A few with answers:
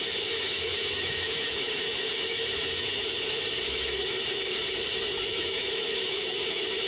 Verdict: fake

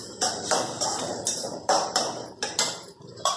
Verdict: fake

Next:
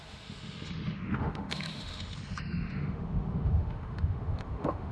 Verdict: fake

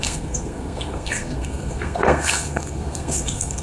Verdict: fake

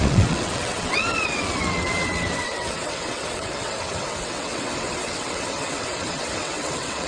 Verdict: fake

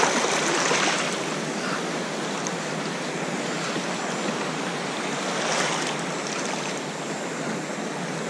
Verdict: real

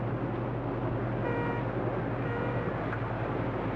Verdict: real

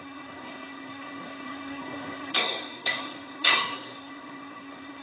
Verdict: fake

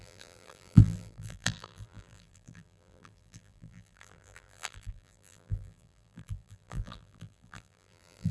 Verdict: fake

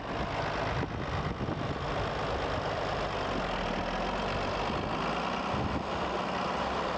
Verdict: real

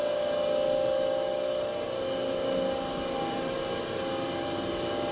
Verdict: real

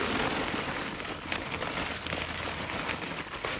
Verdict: real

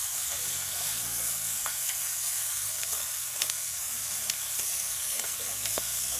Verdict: fake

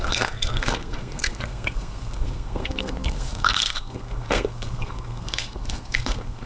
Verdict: fake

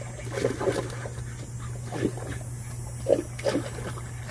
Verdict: real